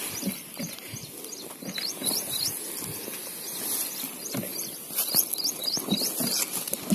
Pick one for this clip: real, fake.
real